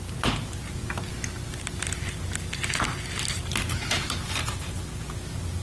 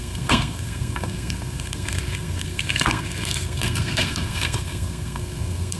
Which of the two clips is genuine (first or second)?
first